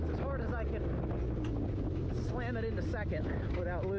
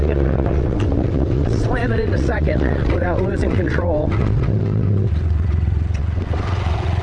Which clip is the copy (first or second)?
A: second